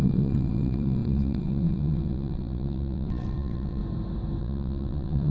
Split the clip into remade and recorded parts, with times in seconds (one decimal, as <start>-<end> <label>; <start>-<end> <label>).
0.0-3.8 remade; 3.8-4.4 recorded; 4.4-5.3 remade